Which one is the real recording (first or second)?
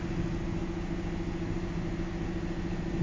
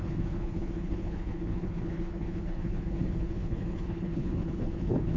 first